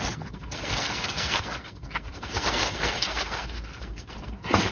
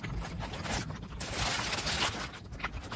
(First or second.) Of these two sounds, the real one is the second